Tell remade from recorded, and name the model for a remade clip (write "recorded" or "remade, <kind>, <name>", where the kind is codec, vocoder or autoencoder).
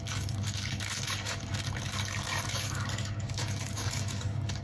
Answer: remade, codec, DAC